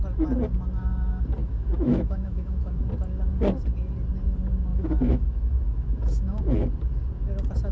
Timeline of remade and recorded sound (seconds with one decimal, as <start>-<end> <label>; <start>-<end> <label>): 0.0-1.4 recorded; 1.4-2.8 remade; 2.8-4.7 recorded; 4.7-6.4 remade; 6.4-7.7 recorded